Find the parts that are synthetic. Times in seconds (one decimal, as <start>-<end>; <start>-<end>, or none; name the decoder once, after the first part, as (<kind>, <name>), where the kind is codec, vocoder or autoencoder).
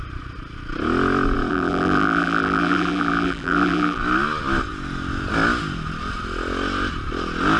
1.5-4.0 (vocoder, BigVGAN v2)